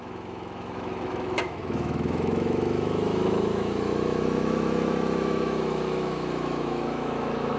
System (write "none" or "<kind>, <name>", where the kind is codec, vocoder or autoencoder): autoencoder, DAC-VAE